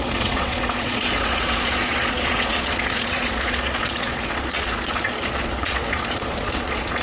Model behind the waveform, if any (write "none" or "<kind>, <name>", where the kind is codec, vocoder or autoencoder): vocoder, Vocos